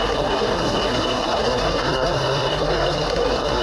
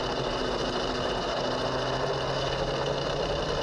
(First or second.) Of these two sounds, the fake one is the first